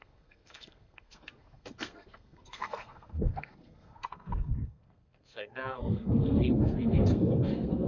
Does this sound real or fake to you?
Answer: fake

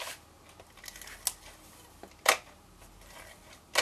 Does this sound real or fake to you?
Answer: real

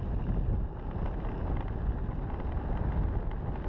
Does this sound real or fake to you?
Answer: real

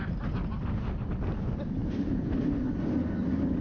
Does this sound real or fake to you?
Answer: real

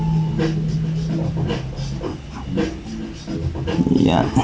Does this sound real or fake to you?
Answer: real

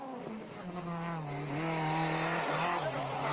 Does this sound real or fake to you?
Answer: real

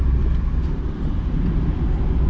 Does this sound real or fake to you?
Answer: real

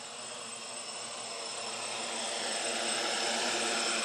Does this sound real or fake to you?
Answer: real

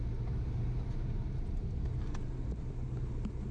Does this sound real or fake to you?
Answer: real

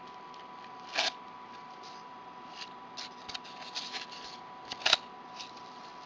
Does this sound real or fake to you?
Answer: real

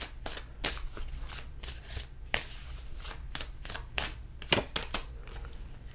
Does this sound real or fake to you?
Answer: real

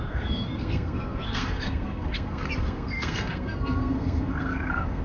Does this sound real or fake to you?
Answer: fake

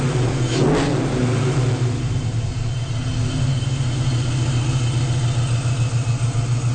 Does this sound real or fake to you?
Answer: real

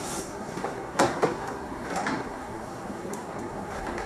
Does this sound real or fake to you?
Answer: fake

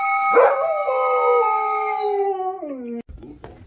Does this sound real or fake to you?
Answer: real